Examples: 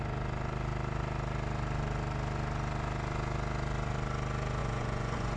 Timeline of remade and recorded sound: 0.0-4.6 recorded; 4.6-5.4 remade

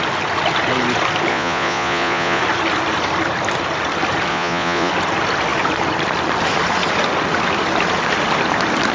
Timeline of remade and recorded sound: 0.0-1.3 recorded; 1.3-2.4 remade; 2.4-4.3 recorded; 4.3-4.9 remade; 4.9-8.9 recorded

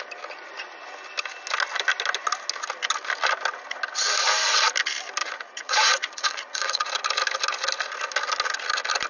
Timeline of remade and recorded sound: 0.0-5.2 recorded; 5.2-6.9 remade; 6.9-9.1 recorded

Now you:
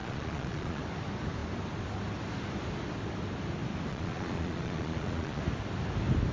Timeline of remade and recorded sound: 0.0-0.8 remade; 0.8-3.9 recorded; 3.9-5.4 remade; 5.4-6.3 recorded

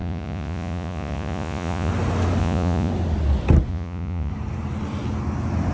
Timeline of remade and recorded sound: 0.0-1.9 remade; 1.9-2.4 recorded; 2.4-2.9 remade; 2.9-3.7 recorded; 3.7-4.3 remade; 4.3-5.7 recorded

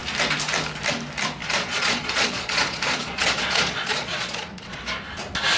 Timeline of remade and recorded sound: 0.0-1.4 recorded; 1.4-4.8 remade; 4.8-5.6 recorded

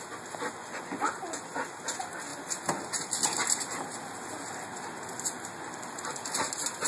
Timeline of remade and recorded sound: 0.0-0.6 recorded; 0.6-1.4 remade; 1.4-6.9 recorded

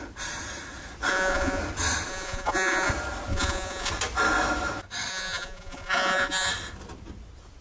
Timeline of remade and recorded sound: 0.0-1.1 recorded; 1.1-1.6 remade; 1.6-2.1 recorded; 2.1-2.9 remade; 2.9-3.3 recorded; 3.3-3.9 remade; 3.9-5.1 recorded; 5.1-6.5 remade; 6.5-7.6 recorded